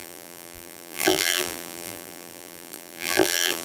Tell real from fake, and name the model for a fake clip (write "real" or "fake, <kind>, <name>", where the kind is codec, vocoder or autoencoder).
fake, vocoder, BigVGAN v2